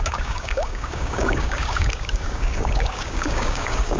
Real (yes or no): no